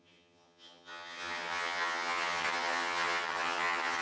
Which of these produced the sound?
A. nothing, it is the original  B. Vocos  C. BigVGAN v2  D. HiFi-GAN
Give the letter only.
D